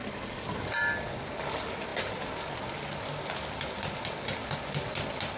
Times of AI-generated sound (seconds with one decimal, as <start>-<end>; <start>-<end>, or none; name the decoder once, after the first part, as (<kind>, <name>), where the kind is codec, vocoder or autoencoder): none

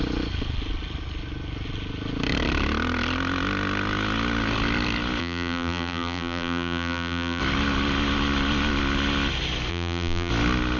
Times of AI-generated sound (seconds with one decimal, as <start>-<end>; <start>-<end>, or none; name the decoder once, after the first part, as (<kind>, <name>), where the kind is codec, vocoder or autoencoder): 5.2-7.4 (vocoder, BigVGAN v2); 9.7-10.3

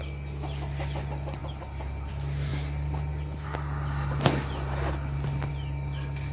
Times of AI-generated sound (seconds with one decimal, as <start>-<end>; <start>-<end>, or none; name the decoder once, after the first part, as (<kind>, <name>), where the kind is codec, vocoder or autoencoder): 1.4-2.1 (vocoder, BigVGAN v2)

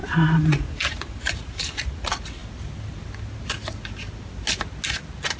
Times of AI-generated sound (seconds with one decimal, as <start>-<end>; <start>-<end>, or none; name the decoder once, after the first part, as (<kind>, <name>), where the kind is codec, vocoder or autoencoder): 0.0-1.9 (vocoder, BigVGAN v2)

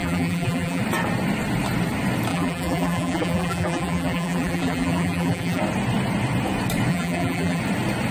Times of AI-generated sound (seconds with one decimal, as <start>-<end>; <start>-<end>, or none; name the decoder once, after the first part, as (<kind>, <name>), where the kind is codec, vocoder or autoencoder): 0.0-0.8 (vocoder, BigVGAN v2); 2.3-5.6; 6.9-7.6

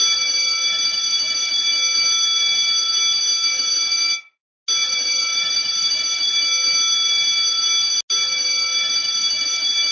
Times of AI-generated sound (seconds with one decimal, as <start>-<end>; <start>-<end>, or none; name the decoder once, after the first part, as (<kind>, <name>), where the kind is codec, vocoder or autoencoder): 4.8-6.0 (vocoder, BigVGAN v2)

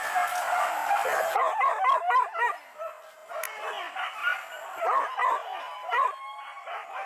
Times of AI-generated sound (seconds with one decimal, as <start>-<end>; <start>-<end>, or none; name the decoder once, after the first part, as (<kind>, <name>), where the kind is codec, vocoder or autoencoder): none

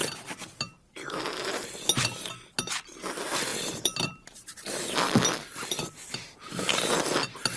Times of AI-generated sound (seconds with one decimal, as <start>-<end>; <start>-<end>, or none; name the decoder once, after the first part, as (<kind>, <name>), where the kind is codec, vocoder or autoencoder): 3.5-6.8 (vocoder, BigVGAN v2)